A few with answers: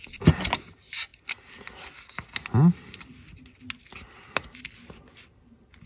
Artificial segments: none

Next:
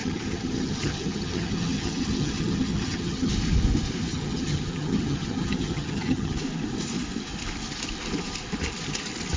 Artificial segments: 0.0-3.3 (vocoder, HiFi-GAN); 4.1-6.4

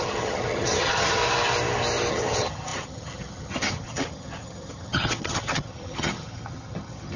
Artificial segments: 0.0-1.2 (vocoder, HiFi-GAN); 2.1-7.2

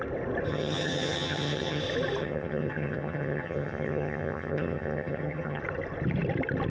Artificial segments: 0.5-1.8 (vocoder, HiFi-GAN); 2.2-5.6

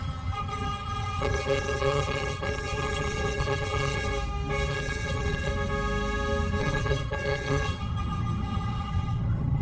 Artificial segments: 0.0-4.1 (vocoder, HiFi-GAN); 4.7-5.5; 6.6-9.6

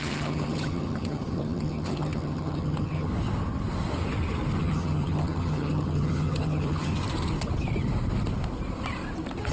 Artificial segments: 0.0-3.1 (vocoder, HiFi-GAN); 4.6-6.9

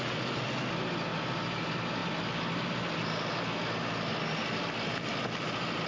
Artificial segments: none

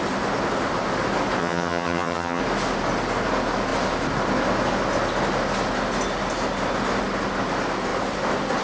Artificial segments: 1.4-2.4 (vocoder, HiFi-GAN)